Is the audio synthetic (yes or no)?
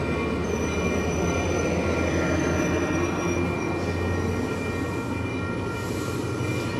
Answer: no